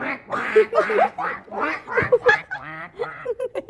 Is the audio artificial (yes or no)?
yes